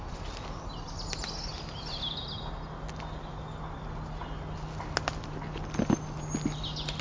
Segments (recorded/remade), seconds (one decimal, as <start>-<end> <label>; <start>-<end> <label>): 0.0-7.0 recorded